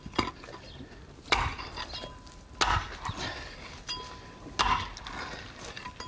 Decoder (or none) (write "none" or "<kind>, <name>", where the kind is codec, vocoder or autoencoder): none